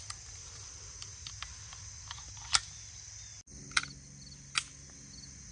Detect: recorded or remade recorded